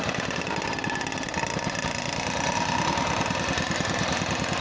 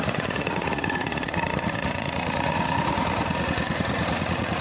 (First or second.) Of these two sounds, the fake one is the second